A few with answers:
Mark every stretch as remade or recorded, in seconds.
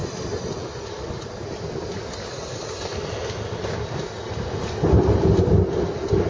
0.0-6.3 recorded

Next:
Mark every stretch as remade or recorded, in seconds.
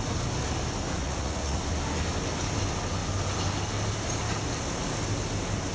0.0-1.0 recorded; 1.0-1.6 remade; 1.6-5.7 recorded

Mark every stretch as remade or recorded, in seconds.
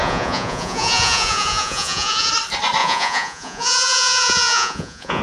0.0-2.3 remade; 2.3-2.8 recorded; 2.8-5.2 remade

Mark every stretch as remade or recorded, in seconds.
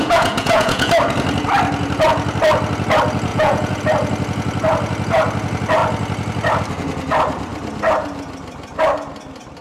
0.0-0.9 remade; 0.9-3.3 recorded; 3.3-3.8 remade; 3.8-9.6 recorded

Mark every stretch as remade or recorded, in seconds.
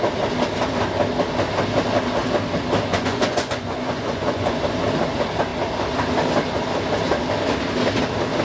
0.0-2.9 recorded; 2.9-4.6 remade; 4.6-8.4 recorded